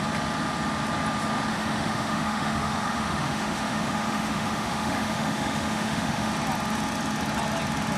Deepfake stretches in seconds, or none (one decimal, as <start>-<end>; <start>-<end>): 1.5-6.3